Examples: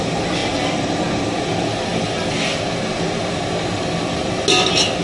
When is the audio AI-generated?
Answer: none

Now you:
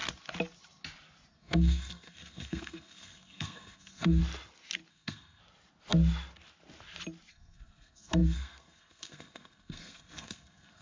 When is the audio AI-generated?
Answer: 1.3-4.2 (codec, SNAC); 4.9-5.4; 7.3-10.8

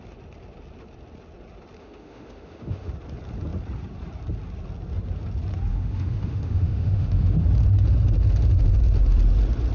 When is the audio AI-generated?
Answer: 1.8-2.9 (autoencoder, DAC-VAE); 5.7-7.4

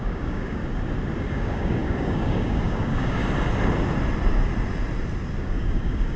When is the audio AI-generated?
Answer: 0.0-0.6 (codec, DAC); 1.2-3.2; 5.4-6.2